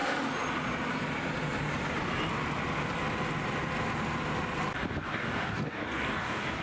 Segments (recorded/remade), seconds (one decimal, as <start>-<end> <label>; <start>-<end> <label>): 0.0-5.0 recorded; 5.0-6.6 remade